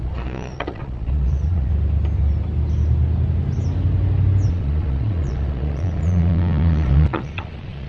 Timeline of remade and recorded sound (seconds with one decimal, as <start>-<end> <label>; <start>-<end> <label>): 0.0-1.7 remade; 1.7-4.5 recorded; 4.5-7.9 remade